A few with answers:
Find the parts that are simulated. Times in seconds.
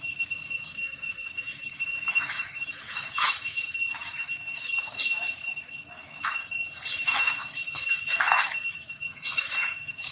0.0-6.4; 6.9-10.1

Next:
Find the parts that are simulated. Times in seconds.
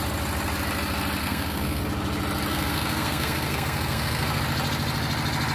1.2-1.8; 2.5-4.4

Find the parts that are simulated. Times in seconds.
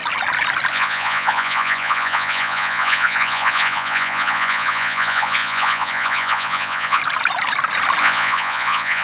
0.7-7.0; 8.0-9.0